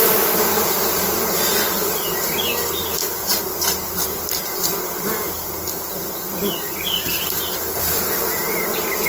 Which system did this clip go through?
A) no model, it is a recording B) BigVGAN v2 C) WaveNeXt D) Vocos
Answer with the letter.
A